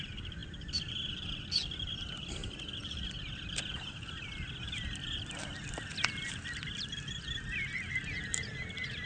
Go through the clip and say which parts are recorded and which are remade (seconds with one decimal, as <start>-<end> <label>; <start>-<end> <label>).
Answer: 0.0-9.1 recorded